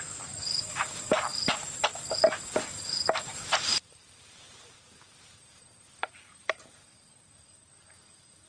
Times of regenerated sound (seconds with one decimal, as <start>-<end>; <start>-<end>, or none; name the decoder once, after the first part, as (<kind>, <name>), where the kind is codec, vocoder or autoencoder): 0.0-8.5 (vocoder, BigVGAN v2)